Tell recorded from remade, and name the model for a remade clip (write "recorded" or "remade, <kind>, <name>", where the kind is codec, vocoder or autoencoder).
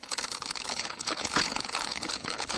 remade, codec, HILCodec